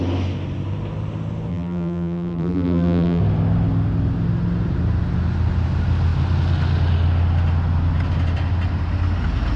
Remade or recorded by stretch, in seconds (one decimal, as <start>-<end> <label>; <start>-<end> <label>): 0.0-1.5 recorded; 1.5-3.2 remade; 3.2-9.6 recorded